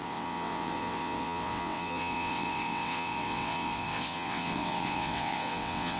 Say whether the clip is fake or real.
fake